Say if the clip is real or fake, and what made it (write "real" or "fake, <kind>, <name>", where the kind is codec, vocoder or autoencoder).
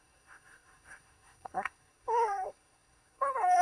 fake, codec, SNAC